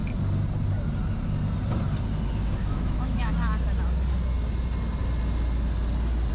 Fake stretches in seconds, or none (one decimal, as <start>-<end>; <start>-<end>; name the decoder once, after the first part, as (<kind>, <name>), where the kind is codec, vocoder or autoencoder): 2.6-3.3 (autoencoder, DAC-VAE)